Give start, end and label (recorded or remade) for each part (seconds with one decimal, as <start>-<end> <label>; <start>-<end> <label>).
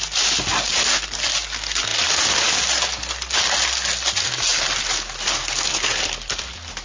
0.0-6.8 recorded